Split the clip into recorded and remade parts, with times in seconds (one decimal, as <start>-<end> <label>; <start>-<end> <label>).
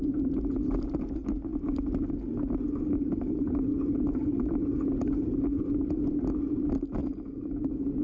0.0-8.0 recorded